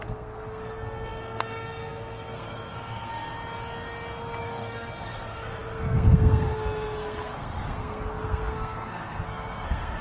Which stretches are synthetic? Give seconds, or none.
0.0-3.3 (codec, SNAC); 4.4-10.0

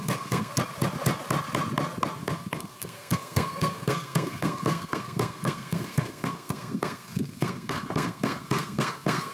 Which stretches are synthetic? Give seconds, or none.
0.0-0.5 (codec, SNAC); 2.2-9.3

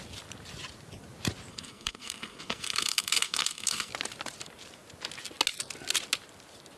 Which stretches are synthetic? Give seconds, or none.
1.5-3.9 (codec, SNAC)

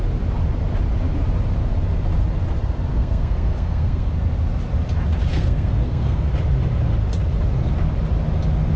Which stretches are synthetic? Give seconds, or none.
2.9-4.1 (codec, SNAC); 5.3-6.3

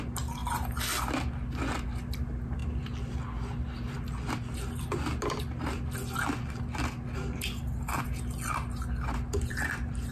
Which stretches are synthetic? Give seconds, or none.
none

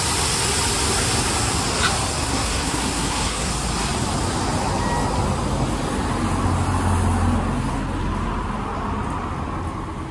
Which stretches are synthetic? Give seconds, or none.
2.2-3.5 (codec, SNAC)